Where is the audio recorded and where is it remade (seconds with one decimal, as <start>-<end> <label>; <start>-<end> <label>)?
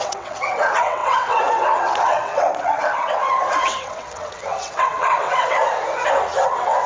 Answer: 0.0-5.6 remade; 5.6-6.4 recorded; 6.4-6.9 remade